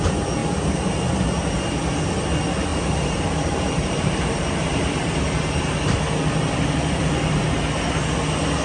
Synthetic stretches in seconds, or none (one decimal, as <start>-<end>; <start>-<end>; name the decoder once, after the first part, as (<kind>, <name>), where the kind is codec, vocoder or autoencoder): 2.7-6.0 (vocoder, BigVGAN v2)